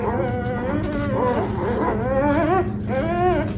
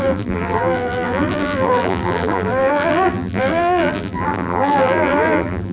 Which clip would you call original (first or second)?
first